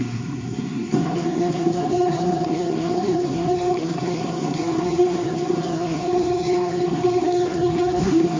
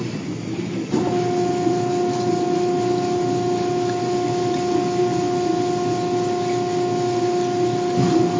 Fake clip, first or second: first